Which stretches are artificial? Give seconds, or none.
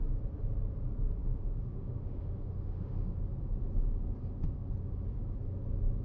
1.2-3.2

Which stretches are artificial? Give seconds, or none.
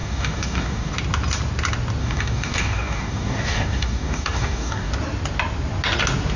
0.0-0.9; 2.0-4.9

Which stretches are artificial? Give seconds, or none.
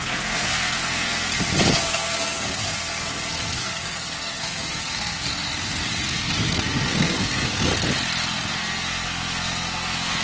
0.0-1.3; 1.8-5.3; 6.1-7.7; 8.5-10.2